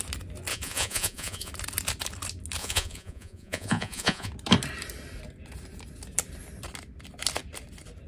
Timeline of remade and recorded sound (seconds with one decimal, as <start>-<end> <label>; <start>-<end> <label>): 0.0-0.5 recorded; 0.5-1.5 remade; 1.5-2.6 recorded; 2.6-4.3 remade; 4.3-8.1 recorded